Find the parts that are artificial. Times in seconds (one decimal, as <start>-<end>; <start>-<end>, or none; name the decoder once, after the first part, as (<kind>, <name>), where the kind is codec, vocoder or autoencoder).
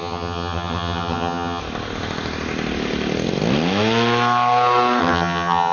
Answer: 0.0-1.6 (vocoder, HiFi-GAN); 5.0-5.7